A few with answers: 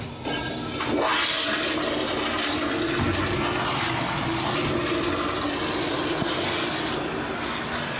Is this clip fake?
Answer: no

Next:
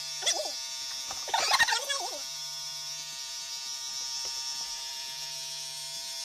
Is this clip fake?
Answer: no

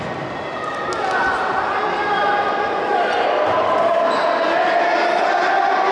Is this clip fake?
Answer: no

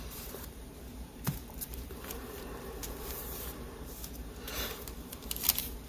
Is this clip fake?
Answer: yes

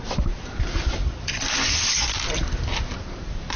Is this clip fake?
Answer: yes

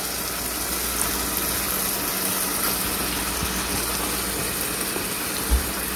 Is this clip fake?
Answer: no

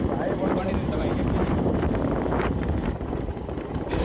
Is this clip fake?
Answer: yes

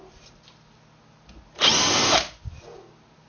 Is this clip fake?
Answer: no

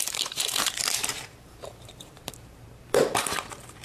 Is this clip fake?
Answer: yes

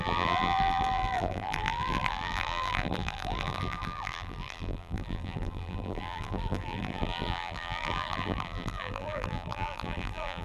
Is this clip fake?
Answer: yes